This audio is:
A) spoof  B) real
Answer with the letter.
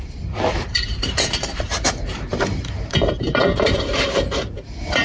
A